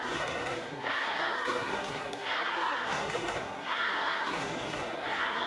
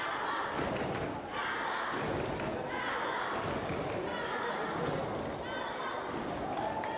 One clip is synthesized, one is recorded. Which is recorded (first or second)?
second